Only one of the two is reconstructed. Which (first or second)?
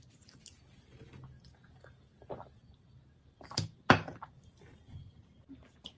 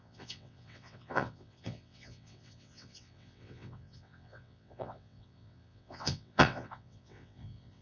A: second